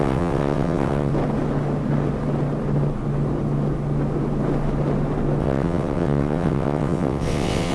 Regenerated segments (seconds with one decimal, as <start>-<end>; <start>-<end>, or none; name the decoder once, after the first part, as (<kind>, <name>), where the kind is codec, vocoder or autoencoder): 0.0-1.1 (vocoder, WaveNeXt); 5.4-7.7